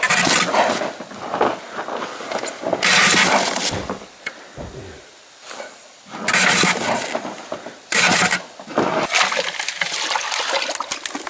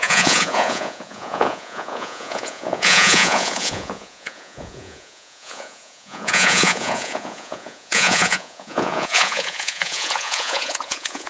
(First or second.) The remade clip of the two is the second